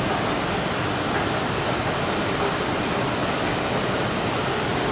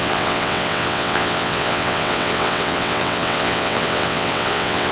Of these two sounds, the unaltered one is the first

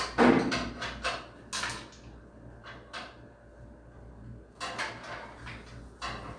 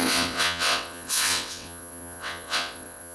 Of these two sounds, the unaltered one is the first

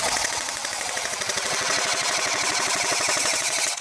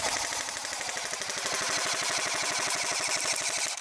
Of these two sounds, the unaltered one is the second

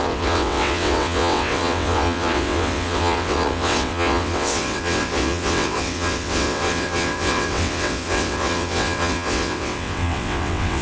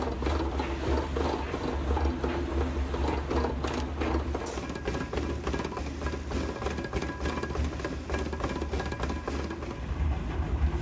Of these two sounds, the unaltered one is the second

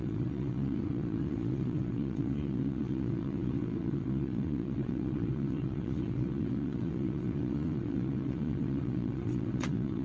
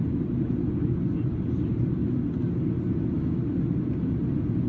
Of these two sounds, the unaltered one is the second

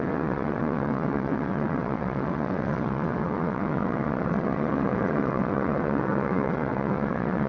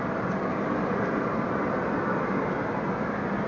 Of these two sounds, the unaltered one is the second